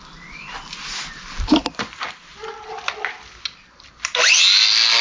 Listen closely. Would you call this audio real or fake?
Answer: real